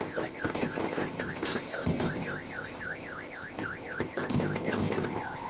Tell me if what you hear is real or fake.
fake